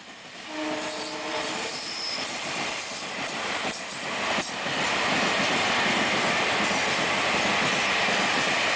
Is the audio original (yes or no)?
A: yes